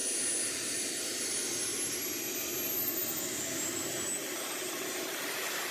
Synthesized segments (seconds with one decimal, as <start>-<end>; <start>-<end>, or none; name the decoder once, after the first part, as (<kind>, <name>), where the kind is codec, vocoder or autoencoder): none